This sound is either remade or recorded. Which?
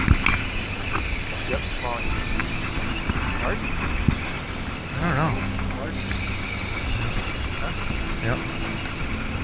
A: recorded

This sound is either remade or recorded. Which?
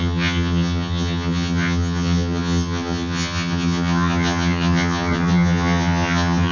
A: remade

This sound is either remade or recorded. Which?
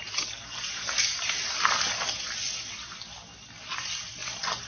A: recorded